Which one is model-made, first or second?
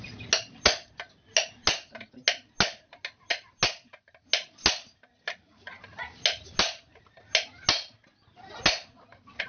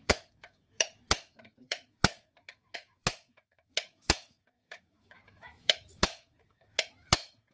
second